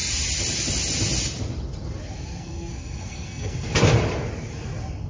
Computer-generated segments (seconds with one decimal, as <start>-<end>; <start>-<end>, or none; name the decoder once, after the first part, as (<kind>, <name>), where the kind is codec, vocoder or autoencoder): 2.3-3.7 (codec, SNAC)